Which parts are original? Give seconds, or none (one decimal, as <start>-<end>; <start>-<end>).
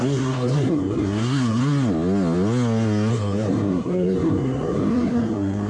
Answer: 1.6-3.1